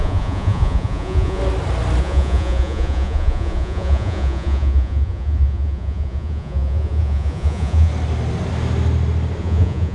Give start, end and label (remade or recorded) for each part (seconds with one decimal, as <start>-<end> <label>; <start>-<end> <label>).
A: 0.0-1.4 remade; 1.4-2.0 recorded; 2.0-7.9 remade; 7.9-9.4 recorded; 9.4-9.9 remade